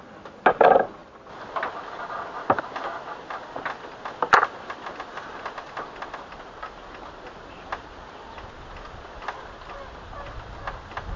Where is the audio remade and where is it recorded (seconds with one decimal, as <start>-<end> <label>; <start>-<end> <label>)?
0.0-11.2 recorded